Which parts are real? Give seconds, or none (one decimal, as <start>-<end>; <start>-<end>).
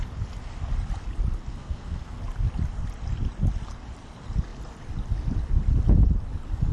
0.0-1.5; 2.2-6.7